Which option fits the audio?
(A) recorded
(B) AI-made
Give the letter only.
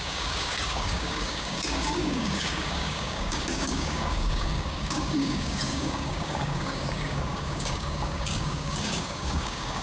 B